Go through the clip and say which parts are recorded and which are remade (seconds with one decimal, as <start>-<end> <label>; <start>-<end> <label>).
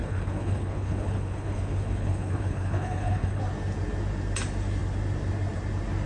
0.0-3.4 remade; 3.4-6.1 recorded